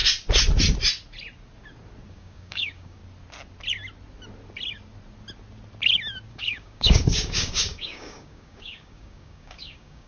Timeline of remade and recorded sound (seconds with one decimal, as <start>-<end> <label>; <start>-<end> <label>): 0.0-2.1 recorded; 2.1-3.0 remade; 3.0-6.3 recorded; 6.3-10.1 remade